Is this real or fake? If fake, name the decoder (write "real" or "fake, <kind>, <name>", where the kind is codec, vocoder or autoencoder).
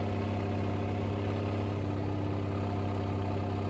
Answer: real